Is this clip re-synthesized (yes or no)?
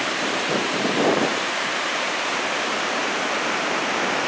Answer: yes